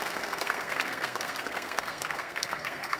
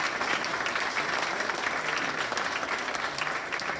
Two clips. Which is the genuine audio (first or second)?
second